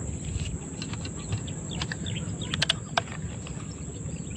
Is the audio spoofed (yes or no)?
no